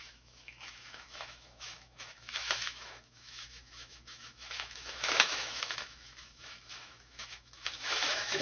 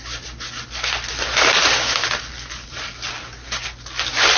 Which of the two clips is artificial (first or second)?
first